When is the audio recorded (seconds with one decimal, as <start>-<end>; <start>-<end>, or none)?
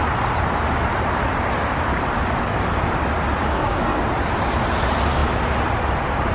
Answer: 0.0-3.5; 4.0-6.3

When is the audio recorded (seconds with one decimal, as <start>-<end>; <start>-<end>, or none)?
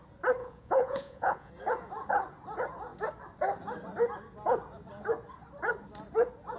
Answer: 0.0-0.4; 1.5-6.6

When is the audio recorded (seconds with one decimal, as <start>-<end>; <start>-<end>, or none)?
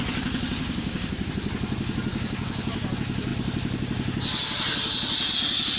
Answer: 0.0-0.6; 1.3-2.1; 2.9-5.8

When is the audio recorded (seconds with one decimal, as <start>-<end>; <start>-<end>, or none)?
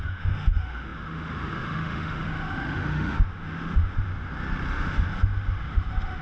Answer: 4.1-4.7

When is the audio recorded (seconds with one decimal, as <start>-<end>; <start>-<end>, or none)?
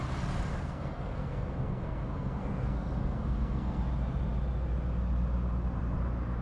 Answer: 0.0-0.5; 3.8-6.4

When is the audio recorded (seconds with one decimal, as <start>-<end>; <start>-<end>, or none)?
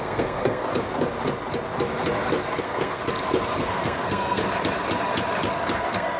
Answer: 0.7-2.6; 3.0-3.6; 4.4-5.8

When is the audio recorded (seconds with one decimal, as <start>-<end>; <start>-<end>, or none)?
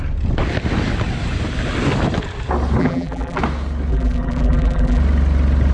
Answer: 0.0-2.8; 3.4-3.9; 5.0-5.7